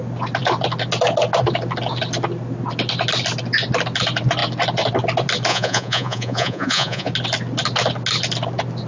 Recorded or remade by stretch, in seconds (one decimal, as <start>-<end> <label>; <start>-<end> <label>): 0.0-5.5 recorded; 5.5-7.1 remade; 7.1-8.9 recorded